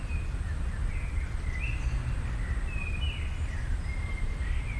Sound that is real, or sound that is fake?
real